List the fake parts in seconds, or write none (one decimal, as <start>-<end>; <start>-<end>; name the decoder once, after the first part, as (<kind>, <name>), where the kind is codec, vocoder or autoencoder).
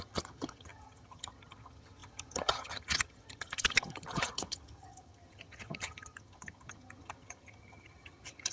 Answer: 0.0-8.5 (vocoder, HiFi-GAN)